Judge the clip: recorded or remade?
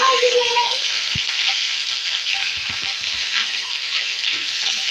remade